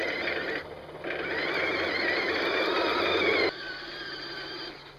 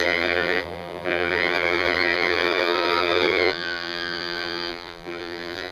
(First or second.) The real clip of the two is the first